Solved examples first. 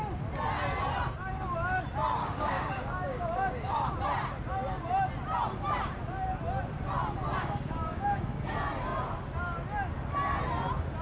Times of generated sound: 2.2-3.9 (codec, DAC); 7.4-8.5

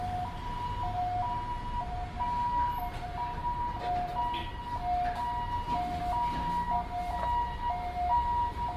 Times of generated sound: none

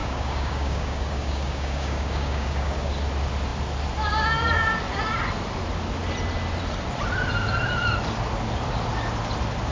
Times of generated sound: 0.0-2.9 (codec, DAC)